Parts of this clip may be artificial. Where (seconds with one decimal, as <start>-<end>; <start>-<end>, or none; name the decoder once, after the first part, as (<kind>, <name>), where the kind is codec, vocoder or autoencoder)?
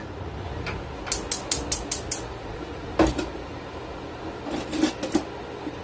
0.0-0.5 (vocoder, Vocos); 2.4-2.9